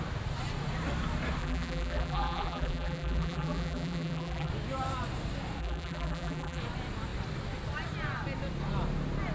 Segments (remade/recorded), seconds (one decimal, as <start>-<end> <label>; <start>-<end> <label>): 0.0-1.4 recorded; 1.4-4.5 remade; 4.5-5.6 recorded; 5.6-6.6 remade; 6.6-9.3 recorded